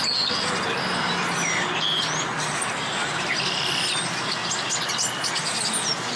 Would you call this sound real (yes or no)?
yes